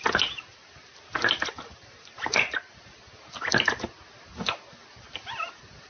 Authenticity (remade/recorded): recorded